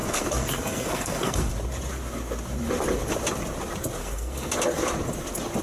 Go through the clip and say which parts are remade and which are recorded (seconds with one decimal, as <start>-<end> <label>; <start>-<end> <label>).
0.0-1.5 remade; 1.5-4.0 recorded; 4.0-4.5 remade; 4.5-5.6 recorded